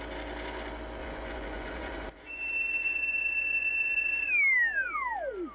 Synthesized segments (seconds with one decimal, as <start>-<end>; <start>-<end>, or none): 1.0-4.3